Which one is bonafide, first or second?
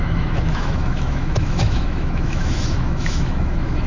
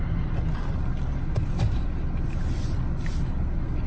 second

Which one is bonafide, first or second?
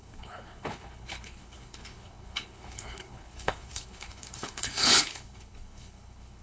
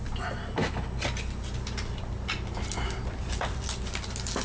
second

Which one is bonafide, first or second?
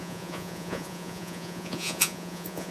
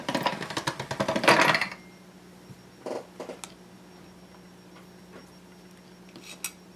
second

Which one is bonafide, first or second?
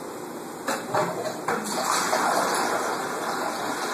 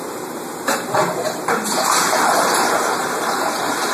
first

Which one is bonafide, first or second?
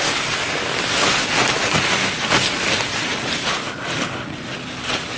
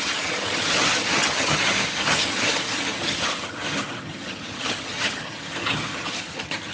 first